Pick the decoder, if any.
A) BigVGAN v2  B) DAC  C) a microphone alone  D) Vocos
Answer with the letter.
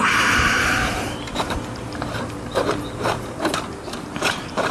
A